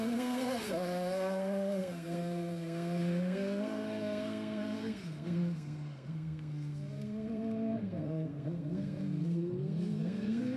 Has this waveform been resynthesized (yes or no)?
yes